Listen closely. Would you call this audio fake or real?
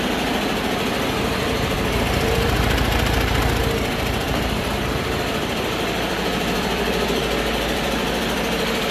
fake